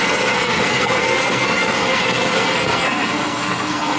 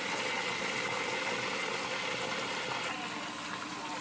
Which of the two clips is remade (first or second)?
first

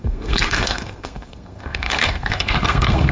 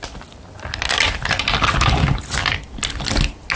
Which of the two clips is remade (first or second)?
first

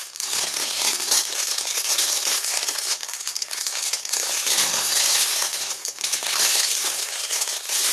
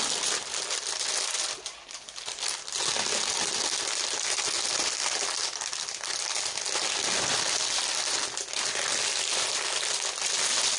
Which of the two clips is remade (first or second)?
first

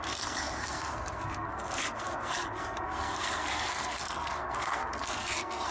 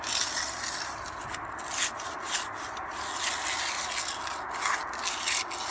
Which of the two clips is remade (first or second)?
first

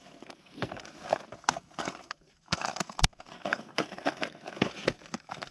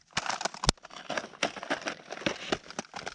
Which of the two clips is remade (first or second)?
first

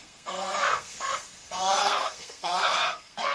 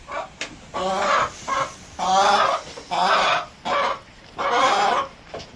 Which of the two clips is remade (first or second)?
first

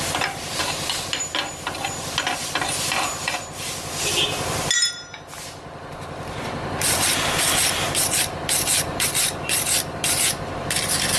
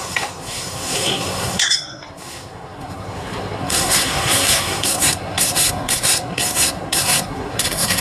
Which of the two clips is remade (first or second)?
second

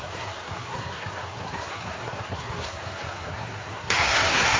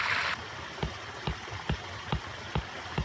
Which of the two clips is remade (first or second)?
first